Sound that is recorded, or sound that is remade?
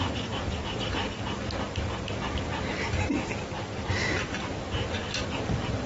recorded